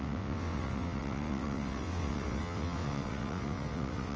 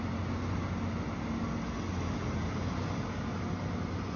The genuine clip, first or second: second